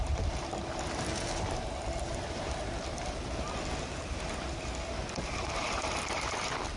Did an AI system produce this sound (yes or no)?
no